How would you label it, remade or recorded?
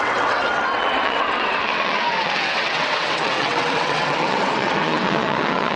remade